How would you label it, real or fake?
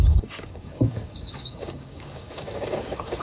fake